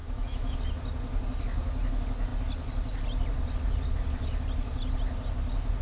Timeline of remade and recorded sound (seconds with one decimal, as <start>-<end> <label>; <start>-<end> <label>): 0.0-0.6 remade; 0.6-5.8 recorded